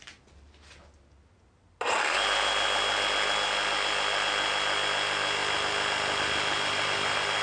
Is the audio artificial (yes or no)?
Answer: no